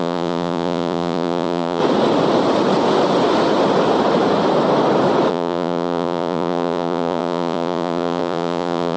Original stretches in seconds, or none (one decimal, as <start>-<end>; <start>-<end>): 1.8-5.3

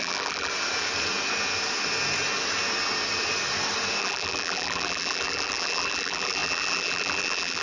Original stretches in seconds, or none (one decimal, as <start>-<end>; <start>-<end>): 0.5-4.0

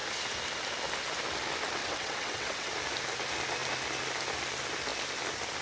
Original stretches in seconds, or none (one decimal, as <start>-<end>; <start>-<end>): 0.0-1.8; 2.7-5.6

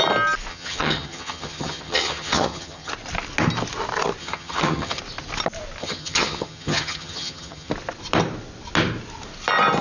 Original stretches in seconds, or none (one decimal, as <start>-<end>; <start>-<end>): 0.0-0.5; 2.9-4.2; 5.0-5.8; 7.7-9.8

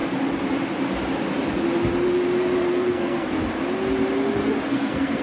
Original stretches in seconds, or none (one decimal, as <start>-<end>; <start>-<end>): 0.0-2.7; 3.4-4.7

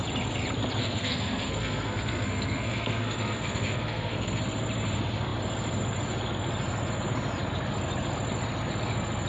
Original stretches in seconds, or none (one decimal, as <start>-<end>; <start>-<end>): 0.0-0.8; 4.4-9.3